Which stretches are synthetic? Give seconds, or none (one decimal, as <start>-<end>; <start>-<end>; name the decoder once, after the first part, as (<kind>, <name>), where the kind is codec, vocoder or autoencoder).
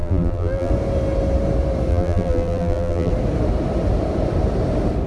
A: 0.0-0.7 (vocoder, BigVGAN v2); 1.9-3.1